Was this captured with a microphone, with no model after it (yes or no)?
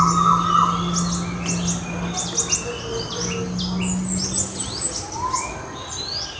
yes